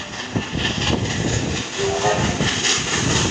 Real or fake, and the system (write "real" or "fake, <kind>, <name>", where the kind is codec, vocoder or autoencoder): real